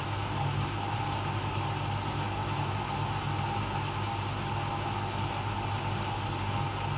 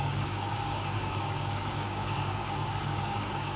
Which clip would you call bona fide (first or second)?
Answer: first